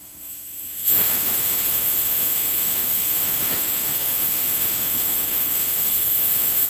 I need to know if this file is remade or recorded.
remade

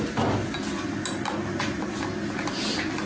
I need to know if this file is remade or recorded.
recorded